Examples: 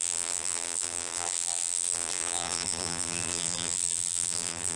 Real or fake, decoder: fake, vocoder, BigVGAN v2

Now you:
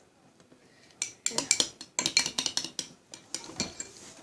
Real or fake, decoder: real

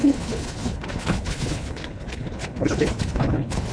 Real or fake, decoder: fake, codec, HILCodec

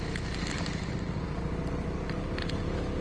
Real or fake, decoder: real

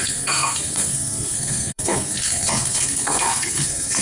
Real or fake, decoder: fake, codec, SNAC